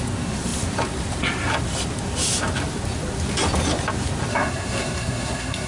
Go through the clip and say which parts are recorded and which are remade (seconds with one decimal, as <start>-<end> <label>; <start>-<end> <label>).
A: 0.0-4.3 recorded; 4.3-5.7 remade